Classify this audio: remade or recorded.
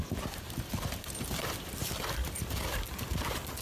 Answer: recorded